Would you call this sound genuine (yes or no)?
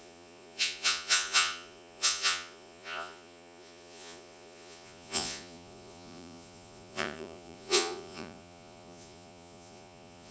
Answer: no